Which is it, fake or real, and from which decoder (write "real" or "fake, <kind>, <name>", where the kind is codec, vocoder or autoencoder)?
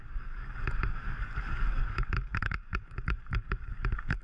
fake, codec, DAC